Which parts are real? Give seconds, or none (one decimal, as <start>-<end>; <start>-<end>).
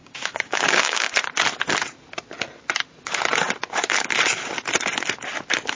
1.1-5.8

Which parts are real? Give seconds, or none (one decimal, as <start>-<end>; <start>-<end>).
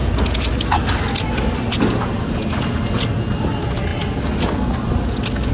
0.0-5.5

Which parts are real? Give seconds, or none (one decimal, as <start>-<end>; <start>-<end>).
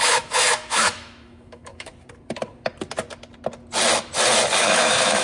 1.9-4.6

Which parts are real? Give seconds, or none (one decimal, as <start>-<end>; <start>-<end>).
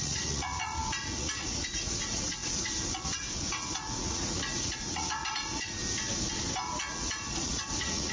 5.8-6.5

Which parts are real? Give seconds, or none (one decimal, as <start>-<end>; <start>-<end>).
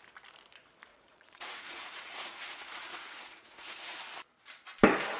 0.0-0.9; 4.0-5.2